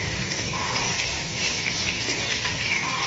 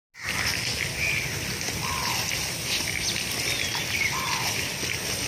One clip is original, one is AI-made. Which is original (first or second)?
second